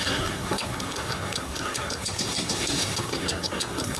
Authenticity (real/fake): fake